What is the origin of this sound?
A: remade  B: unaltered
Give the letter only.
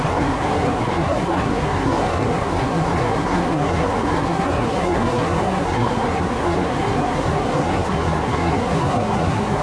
A